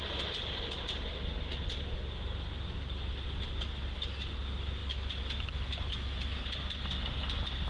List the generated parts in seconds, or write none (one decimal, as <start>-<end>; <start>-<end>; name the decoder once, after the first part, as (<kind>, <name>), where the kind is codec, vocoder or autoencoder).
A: 4.8-6.4 (autoencoder, DAC-VAE)